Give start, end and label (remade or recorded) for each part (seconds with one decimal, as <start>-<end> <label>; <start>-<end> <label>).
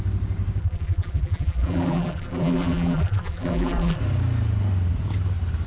0.0-0.6 recorded; 0.6-4.0 remade; 4.0-5.7 recorded